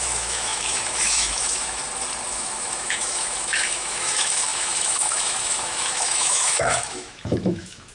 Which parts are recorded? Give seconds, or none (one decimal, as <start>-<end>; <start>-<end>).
1.8-2.3